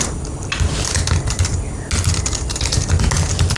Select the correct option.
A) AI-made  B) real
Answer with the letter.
B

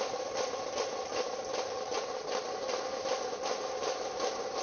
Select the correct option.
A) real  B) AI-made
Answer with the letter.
A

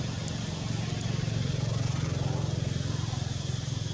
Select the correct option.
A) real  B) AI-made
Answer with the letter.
A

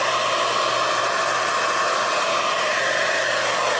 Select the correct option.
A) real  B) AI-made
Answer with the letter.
A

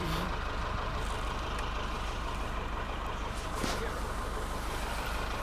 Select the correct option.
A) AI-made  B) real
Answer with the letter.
A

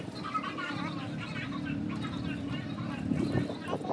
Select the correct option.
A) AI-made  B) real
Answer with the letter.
A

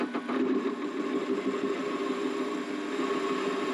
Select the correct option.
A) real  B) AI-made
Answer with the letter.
A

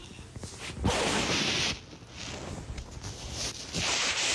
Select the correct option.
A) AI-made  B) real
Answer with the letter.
B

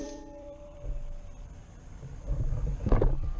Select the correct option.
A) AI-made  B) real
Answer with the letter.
A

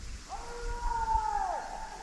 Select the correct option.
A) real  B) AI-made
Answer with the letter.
A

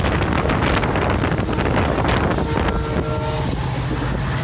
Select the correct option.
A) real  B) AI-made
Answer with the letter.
A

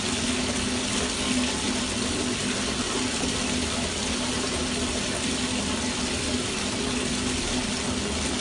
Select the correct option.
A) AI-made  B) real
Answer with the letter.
B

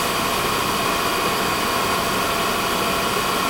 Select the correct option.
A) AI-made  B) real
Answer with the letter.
B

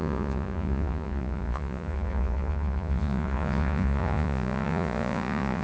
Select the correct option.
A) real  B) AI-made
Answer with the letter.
B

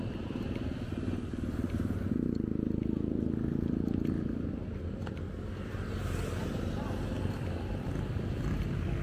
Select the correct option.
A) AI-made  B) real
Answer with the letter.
B